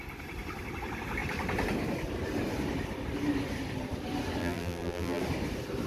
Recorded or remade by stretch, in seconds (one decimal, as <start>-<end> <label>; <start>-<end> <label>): 0.0-4.4 recorded; 4.4-5.2 remade; 5.2-5.9 recorded